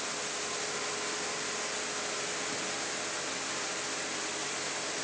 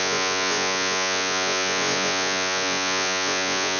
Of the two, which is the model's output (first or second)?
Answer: second